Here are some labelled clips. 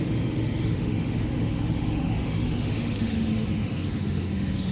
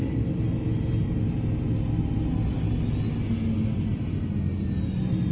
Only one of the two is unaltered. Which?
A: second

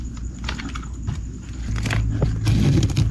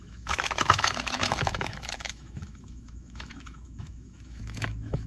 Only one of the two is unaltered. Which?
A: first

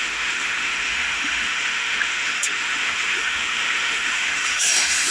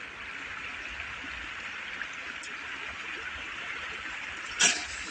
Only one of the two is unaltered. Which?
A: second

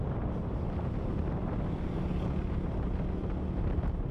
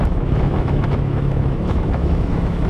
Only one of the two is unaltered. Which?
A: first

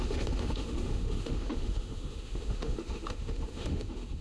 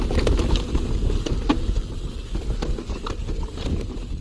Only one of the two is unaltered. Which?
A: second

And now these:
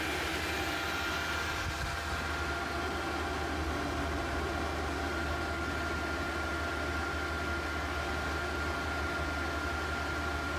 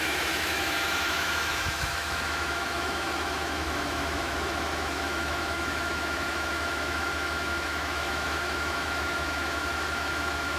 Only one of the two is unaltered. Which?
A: first